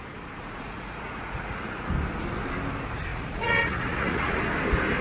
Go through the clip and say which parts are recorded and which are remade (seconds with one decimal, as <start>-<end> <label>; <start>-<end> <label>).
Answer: 0.0-0.4 recorded; 0.4-1.9 remade; 1.9-3.1 recorded; 3.1-4.4 remade; 4.4-5.0 recorded